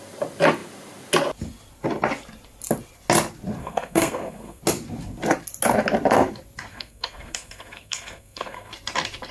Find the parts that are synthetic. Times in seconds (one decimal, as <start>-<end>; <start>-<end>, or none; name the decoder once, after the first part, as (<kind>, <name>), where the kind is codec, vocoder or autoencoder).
3.6-4.6 (codec, SNAC); 6.7-8.7